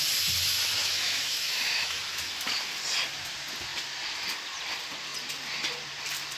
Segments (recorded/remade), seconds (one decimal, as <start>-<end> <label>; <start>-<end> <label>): 0.0-0.8 recorded; 0.8-2.0 remade; 2.0-6.4 recorded